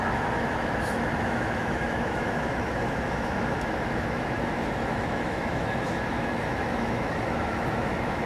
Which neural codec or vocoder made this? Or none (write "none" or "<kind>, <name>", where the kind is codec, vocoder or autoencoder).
autoencoder, DAC-VAE